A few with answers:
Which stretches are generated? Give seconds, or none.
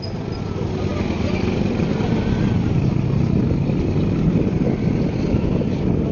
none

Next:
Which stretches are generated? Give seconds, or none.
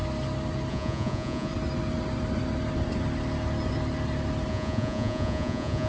0.7-1.5 (vocoder, Vocos); 4.5-5.9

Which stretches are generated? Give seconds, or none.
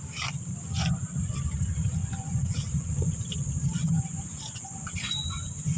2.0-3.3 (vocoder, Vocos); 3.8-5.8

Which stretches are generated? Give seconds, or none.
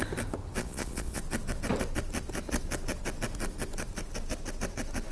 0.6-1.2 (vocoder, Vocos)